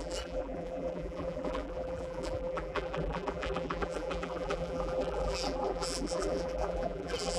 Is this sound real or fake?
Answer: fake